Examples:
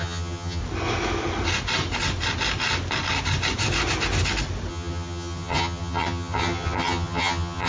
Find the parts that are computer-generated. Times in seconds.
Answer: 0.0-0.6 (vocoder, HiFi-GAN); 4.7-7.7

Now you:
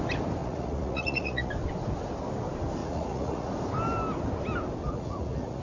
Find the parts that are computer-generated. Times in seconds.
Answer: 0.4-1.5 (vocoder, Vocos); 2.8-3.5; 4.8-5.6